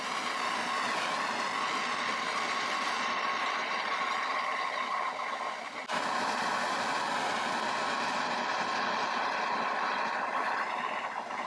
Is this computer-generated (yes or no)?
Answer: no